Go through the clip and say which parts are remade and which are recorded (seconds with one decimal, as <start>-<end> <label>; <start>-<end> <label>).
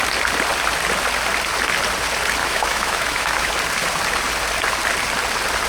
0.0-2.4 recorded; 2.4-3.5 remade; 3.5-5.7 recorded